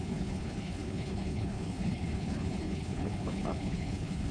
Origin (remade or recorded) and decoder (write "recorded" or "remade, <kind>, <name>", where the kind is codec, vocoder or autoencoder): remade, codec, HILCodec